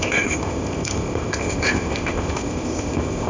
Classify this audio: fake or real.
fake